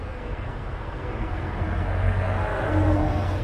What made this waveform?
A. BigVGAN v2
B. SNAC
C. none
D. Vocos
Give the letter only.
B